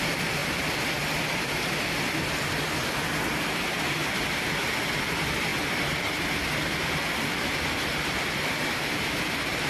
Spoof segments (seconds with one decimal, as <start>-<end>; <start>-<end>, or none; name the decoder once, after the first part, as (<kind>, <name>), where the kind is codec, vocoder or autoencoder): 0.0-5.5 (vocoder, BigVGAN v2); 6.3-9.7